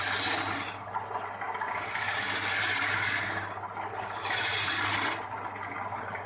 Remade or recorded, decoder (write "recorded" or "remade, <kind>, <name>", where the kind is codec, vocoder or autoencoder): recorded